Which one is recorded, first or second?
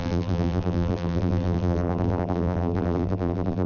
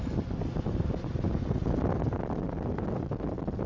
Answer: second